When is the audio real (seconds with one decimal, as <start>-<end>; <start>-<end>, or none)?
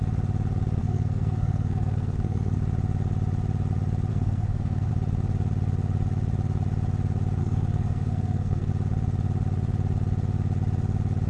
0.0-0.8; 2.6-4.1; 4.9-7.4; 8.7-11.3